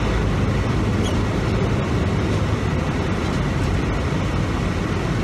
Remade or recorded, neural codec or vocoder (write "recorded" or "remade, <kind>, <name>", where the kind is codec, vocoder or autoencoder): recorded